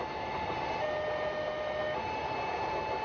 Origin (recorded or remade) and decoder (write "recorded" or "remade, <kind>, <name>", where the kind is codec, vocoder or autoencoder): recorded